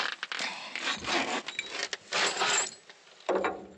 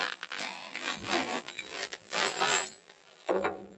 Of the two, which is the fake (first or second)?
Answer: second